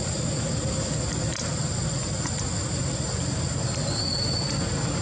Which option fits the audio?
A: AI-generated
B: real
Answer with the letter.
B